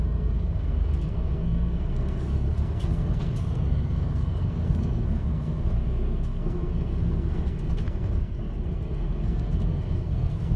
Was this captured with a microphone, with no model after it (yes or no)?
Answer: no